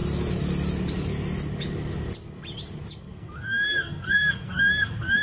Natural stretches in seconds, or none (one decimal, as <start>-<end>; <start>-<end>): 0.0-3.0